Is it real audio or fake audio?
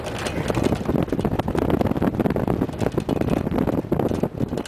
real